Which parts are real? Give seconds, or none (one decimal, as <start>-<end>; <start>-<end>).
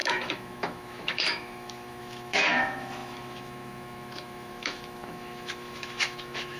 none